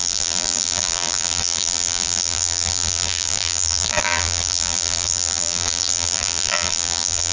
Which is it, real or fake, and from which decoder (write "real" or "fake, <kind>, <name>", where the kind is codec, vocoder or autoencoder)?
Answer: fake, vocoder, BigVGAN v2